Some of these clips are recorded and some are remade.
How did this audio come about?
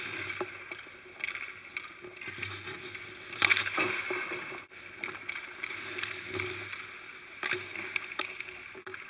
recorded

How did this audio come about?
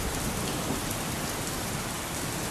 remade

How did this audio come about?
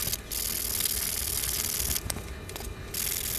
recorded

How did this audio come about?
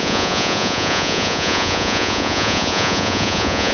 remade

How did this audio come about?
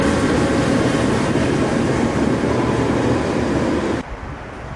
recorded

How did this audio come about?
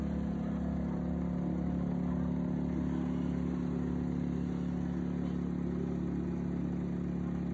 recorded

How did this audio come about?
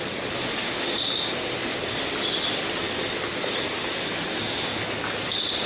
recorded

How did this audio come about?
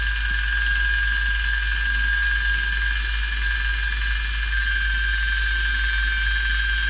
recorded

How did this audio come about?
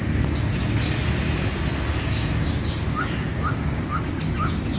recorded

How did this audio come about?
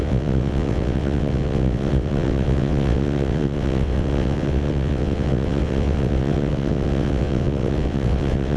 remade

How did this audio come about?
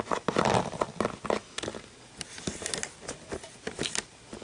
recorded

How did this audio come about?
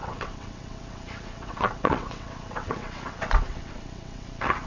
remade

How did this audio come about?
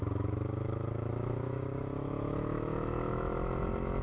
remade